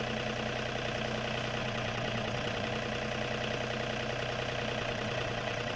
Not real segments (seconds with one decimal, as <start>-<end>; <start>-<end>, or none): 1.6-2.7; 4.8-5.8